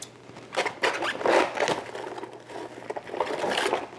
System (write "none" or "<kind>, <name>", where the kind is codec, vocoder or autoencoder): none